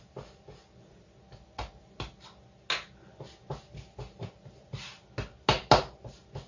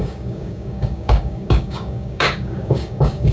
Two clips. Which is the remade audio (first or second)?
second